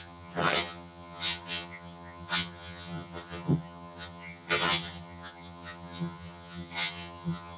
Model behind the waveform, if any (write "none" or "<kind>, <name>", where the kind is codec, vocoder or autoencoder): vocoder, HiFi-GAN